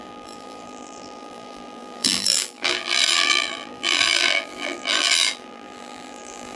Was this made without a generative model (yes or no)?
no